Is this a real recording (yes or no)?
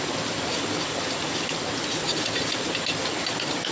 yes